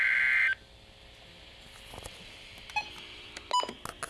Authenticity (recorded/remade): recorded